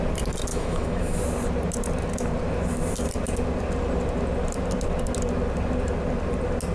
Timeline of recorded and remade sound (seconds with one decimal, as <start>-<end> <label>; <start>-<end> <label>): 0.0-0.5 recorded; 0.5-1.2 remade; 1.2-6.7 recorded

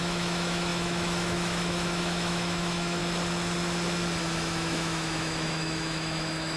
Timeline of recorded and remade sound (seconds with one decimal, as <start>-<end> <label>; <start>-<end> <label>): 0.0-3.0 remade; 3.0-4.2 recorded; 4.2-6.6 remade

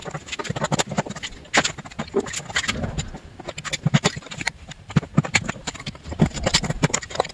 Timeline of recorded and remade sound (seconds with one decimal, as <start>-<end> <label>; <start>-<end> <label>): 0.0-3.9 recorded; 3.9-5.1 remade; 5.1-5.6 recorded; 5.6-7.3 remade

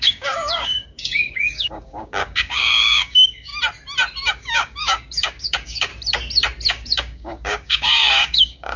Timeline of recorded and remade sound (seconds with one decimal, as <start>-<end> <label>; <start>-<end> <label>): 0.0-3.5 remade; 3.5-4.3 recorded; 4.3-5.9 remade; 5.9-6.7 recorded; 6.7-8.8 remade